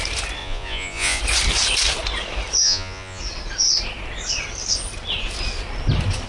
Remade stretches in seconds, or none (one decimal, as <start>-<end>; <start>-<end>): 0.4-1.2; 2.6-3.2